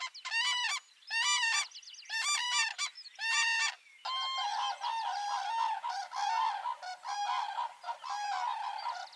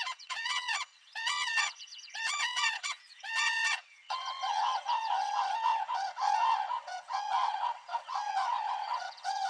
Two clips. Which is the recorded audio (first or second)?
first